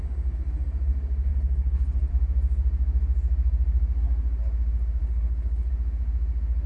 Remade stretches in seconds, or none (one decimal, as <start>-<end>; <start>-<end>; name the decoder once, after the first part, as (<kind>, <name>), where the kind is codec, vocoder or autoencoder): 1.3-2.1 (codec, HILCodec); 5.0-5.7